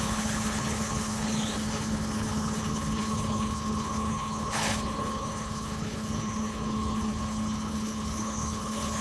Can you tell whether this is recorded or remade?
remade